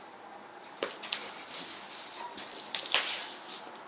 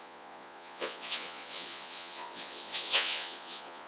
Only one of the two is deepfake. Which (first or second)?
second